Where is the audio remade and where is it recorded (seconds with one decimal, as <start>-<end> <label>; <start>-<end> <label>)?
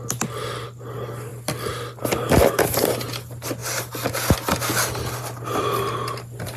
0.0-6.6 recorded